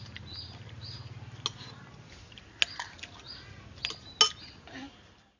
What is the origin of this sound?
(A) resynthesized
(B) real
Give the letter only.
B